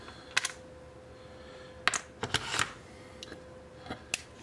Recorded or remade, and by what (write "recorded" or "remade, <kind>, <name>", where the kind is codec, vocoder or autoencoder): recorded